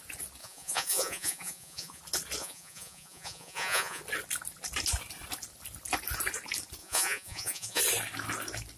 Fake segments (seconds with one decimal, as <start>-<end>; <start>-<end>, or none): 0.4-2.0; 2.4-4.0; 6.8-7.8